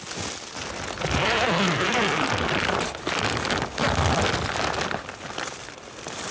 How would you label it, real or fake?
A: real